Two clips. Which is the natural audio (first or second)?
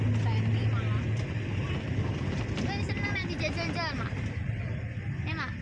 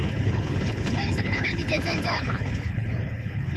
first